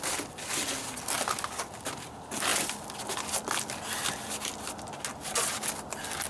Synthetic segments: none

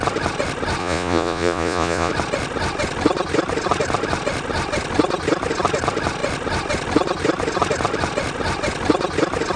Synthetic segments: 0.8-2.1 (vocoder, Vocos)

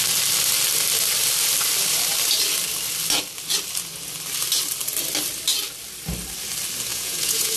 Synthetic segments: 6.9-7.6 (vocoder, Vocos)

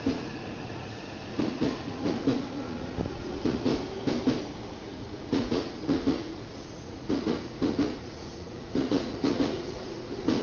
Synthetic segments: 0.0-3.7 (vocoder, Vocos); 4.7-10.4

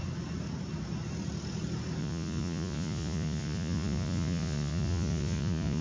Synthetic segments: 2.0-5.8 (vocoder, Vocos)

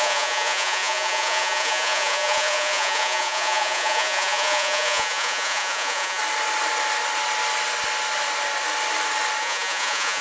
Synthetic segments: 0.0-6.2 (vocoder, Vocos); 9.4-10.2

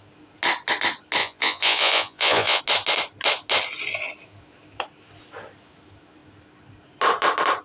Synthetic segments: 1.2-2.6 (vocoder, Vocos)